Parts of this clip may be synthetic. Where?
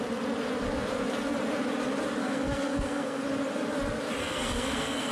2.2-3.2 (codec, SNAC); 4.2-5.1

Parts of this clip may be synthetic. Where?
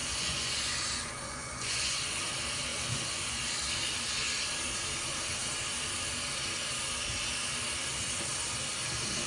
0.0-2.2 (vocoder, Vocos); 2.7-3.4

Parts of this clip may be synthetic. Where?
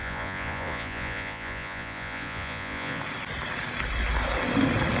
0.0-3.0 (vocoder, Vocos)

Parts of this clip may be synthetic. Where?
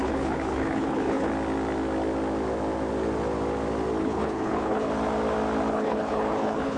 0.0-1.3 (codec, HILCodec); 4.0-4.9; 5.7-6.8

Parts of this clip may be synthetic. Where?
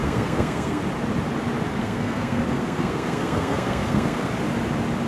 0.0-0.8 (codec, SNAC); 1.8-4.3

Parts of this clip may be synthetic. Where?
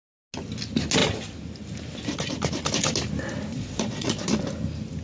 3.5-4.2 (vocoder, Vocos)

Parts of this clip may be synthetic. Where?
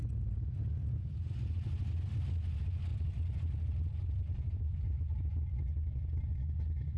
2.9-5.3 (vocoder, BigVGAN v2)